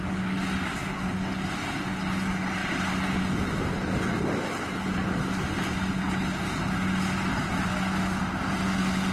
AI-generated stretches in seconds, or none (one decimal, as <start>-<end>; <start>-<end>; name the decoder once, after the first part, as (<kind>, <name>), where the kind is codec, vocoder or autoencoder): none